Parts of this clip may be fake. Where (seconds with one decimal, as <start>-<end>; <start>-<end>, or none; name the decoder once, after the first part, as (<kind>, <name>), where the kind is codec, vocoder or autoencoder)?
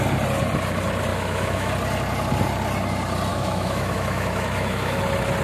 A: 1.1-1.7 (autoencoder, DAC-VAE); 3.3-5.0